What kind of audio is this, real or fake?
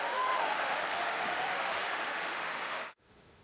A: fake